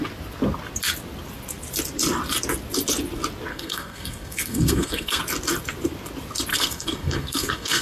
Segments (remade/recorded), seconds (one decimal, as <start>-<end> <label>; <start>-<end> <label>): 0.0-3.5 recorded; 3.5-5.2 remade; 5.2-6.5 recorded; 6.5-7.8 remade